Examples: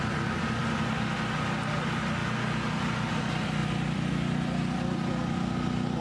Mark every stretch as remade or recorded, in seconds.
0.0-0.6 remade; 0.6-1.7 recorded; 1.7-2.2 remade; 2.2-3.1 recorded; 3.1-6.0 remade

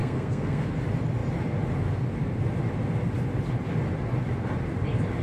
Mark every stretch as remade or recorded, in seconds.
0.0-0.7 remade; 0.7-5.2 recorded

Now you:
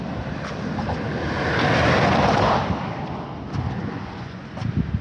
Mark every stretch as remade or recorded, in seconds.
0.0-3.8 recorded; 3.8-4.4 remade; 4.4-5.0 recorded

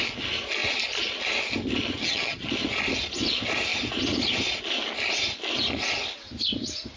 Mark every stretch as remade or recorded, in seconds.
0.0-2.0 recorded; 2.0-2.5 remade; 2.5-7.0 recorded

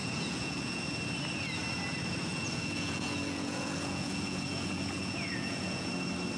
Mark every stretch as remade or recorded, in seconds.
0.0-0.8 remade; 0.8-2.3 recorded; 2.3-5.9 remade; 5.9-6.4 recorded

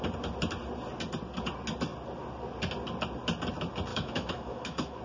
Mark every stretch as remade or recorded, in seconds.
0.0-3.9 recorded; 3.9-5.0 remade

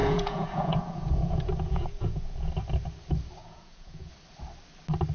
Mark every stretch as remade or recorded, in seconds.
0.0-2.5 remade; 2.5-3.4 recorded; 3.4-4.1 remade; 4.1-5.1 recorded

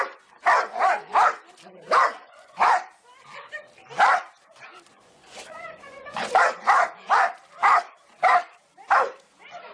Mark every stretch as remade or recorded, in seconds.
0.0-2.2 recorded; 2.2-2.7 remade; 2.7-4.9 recorded; 4.9-6.4 remade; 6.4-9.7 recorded